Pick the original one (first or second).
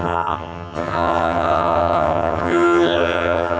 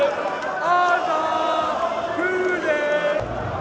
second